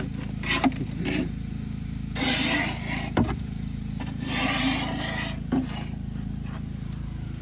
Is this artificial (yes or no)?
yes